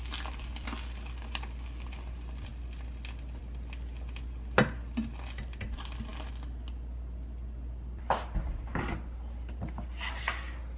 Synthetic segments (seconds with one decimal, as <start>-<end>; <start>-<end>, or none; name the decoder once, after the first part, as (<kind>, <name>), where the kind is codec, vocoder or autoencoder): none